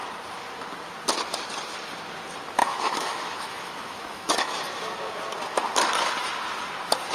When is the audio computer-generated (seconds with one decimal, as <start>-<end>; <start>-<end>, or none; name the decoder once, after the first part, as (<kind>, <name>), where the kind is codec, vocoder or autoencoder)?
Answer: 2.6-4.6 (autoencoder, DAC-VAE)